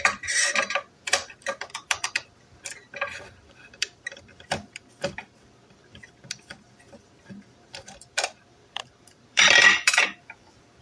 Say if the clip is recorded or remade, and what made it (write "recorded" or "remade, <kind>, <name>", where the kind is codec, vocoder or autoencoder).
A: remade, vocoder, BigVGAN v2